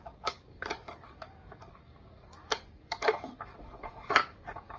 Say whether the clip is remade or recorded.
remade